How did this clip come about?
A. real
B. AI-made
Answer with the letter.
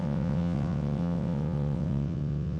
B